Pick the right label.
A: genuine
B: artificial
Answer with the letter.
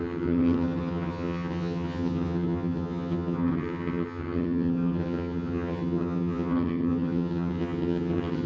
B